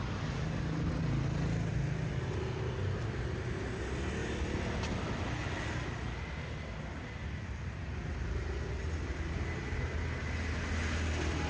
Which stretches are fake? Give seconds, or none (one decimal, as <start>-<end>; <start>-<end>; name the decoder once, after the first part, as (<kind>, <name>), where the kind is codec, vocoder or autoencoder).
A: 4.2-5.7 (vocoder, BigVGAN v2)